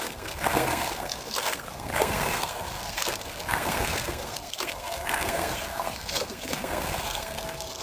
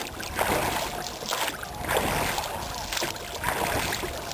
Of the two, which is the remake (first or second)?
first